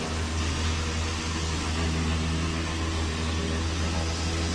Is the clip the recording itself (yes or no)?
yes